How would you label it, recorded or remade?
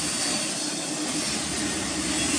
recorded